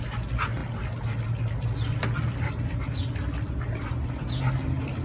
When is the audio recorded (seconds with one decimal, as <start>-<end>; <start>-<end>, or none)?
0.0-5.0